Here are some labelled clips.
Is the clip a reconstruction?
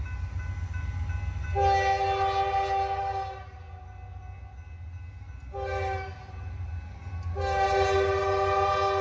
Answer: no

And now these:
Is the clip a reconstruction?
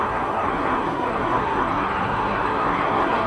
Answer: yes